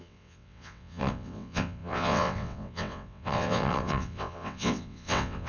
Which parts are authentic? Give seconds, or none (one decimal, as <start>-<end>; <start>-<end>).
none